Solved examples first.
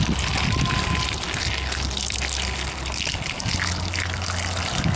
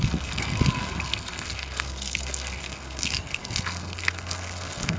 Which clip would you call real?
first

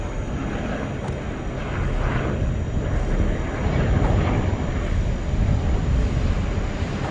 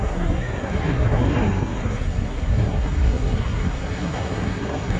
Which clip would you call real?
first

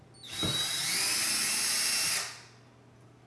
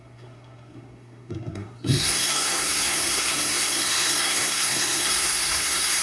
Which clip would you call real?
first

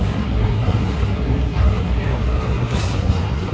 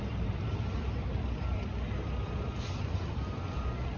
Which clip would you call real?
second